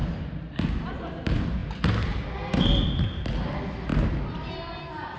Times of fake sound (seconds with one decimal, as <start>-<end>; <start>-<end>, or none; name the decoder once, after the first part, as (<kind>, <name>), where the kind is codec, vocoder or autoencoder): none